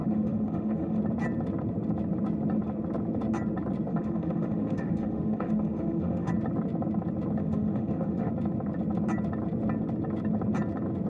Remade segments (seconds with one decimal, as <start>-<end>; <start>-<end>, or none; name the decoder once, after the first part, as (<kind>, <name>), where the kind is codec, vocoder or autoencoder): 0.0-1.0 (autoencoder, DAC-VAE); 3.9-6.3; 7.4-8.3